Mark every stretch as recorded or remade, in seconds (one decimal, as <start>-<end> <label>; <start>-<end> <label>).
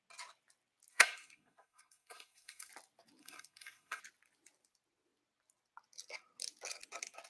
0.0-0.9 recorded; 0.9-2.7 remade; 2.7-3.2 recorded; 3.2-4.0 remade; 4.0-7.3 recorded